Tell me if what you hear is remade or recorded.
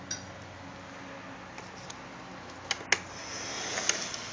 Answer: recorded